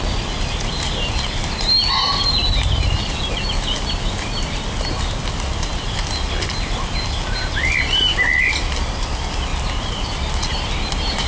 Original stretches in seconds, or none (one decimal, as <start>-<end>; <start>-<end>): 0.0-11.3